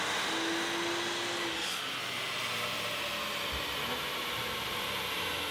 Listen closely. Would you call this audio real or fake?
real